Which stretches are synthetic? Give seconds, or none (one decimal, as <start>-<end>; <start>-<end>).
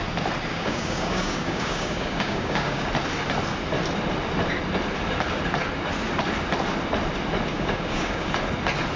0.5-2.9; 7.5-8.3